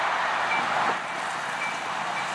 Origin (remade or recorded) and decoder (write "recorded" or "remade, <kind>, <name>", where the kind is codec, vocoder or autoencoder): recorded